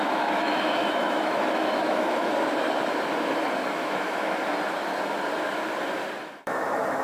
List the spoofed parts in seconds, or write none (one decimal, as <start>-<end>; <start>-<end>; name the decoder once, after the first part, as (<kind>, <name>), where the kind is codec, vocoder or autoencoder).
0.0-2.3 (autoencoder, DAC-VAE); 3.7-4.5; 6.2-7.0